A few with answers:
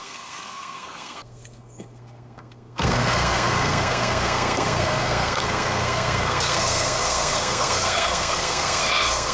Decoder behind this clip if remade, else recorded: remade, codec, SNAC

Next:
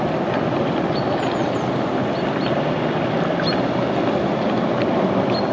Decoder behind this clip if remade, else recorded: recorded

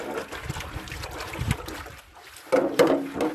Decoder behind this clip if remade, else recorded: recorded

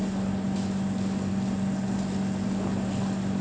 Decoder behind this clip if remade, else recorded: recorded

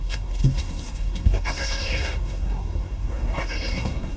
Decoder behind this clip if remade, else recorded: remade, codec, SNAC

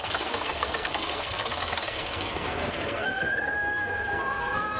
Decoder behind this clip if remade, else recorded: remade, codec, SNAC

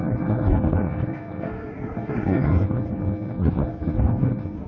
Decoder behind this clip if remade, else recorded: remade, codec, SNAC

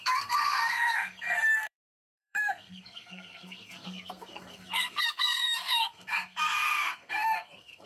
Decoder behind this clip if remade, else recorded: remade, codec, SNAC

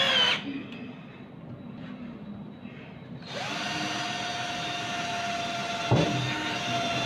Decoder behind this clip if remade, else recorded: recorded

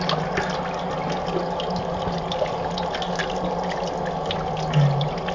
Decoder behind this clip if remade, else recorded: recorded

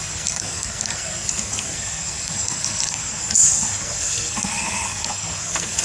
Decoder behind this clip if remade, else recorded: remade, codec, SNAC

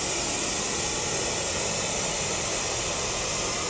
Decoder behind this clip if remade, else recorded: recorded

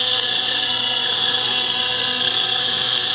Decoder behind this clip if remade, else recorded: remade, codec, SNAC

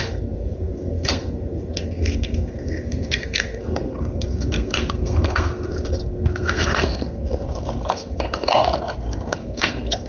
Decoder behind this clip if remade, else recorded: remade, codec, SNAC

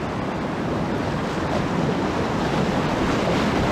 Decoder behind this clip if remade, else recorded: recorded